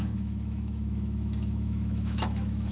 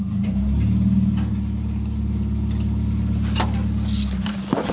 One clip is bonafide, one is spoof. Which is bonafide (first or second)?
second